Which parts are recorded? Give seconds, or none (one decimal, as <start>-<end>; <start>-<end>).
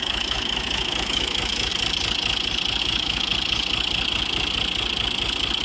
1.7-2.8; 3.3-5.6